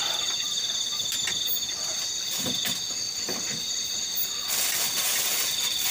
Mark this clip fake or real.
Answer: real